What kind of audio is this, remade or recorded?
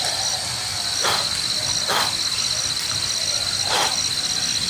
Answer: recorded